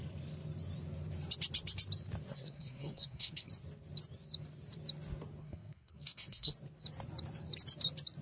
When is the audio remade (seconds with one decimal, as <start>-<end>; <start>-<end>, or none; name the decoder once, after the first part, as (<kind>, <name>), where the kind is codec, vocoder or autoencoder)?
2.3-3.5 (codec, SNAC); 5.4-6.5